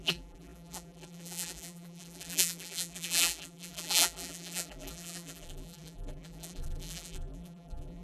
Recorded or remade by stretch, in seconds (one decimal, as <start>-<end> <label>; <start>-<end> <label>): 0.0-8.0 remade